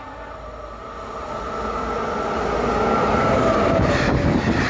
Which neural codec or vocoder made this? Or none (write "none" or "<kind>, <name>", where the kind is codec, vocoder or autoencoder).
none